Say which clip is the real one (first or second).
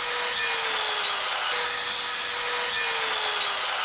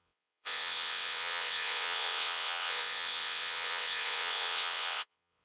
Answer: first